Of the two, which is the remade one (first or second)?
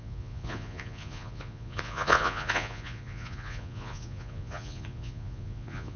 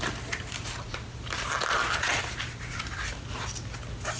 first